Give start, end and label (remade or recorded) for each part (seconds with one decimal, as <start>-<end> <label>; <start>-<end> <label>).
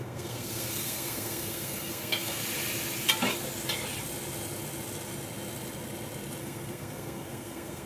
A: 0.0-2.4 remade; 2.4-6.4 recorded; 6.4-7.9 remade